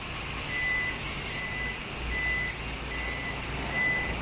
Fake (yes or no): no